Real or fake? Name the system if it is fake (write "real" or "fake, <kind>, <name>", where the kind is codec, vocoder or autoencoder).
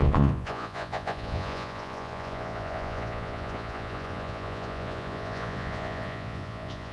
fake, vocoder, Vocos